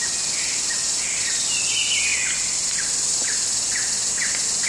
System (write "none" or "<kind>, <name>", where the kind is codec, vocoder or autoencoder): none